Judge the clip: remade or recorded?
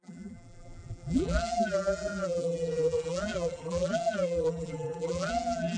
remade